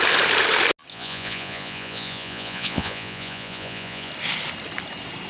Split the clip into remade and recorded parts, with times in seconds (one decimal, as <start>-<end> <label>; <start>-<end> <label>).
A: 0.0-0.9 recorded; 0.9-4.1 remade; 4.1-5.3 recorded